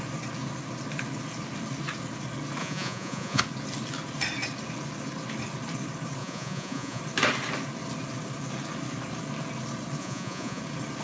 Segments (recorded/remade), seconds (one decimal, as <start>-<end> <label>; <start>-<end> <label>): 0.0-2.6 recorded; 2.6-3.4 remade; 3.4-6.2 recorded; 6.2-7.0 remade; 7.0-10.0 recorded; 10.0-10.6 remade; 10.6-11.0 recorded